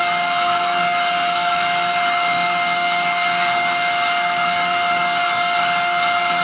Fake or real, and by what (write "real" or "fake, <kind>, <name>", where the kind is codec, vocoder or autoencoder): fake, codec, DAC